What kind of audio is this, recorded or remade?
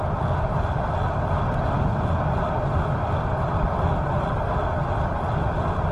recorded